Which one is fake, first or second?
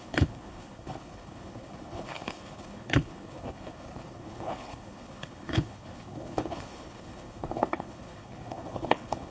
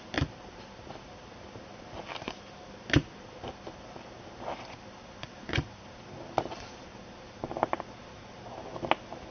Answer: first